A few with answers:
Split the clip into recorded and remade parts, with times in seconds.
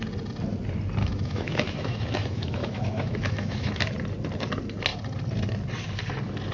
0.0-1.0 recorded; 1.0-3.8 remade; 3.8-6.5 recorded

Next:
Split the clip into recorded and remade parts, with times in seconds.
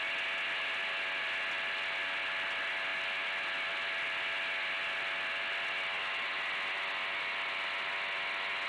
0.0-8.7 recorded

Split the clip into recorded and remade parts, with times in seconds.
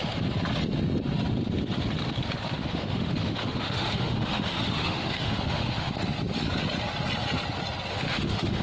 0.0-2.6 recorded; 2.6-5.9 remade; 5.9-7.9 recorded; 7.9-8.6 remade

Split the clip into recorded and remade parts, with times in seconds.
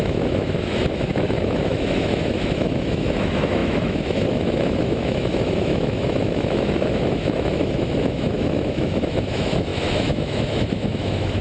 0.0-11.4 remade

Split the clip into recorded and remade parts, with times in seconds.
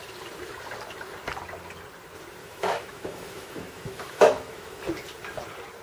0.0-2.4 recorded; 2.4-4.8 remade; 4.8-5.8 recorded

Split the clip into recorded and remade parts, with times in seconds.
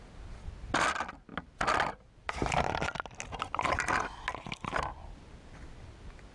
0.0-6.3 recorded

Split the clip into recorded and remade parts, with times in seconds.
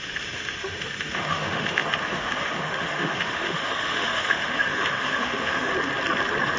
0.0-5.7 remade; 5.7-6.6 recorded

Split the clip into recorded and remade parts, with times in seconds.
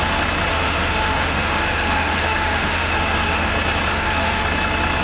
0.0-0.5 recorded; 0.5-3.5 remade; 3.5-3.9 recorded; 3.9-4.4 remade; 4.4-5.0 recorded